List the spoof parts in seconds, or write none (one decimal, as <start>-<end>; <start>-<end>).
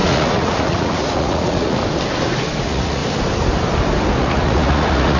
0.0-1.8; 2.6-3.0; 4.2-5.2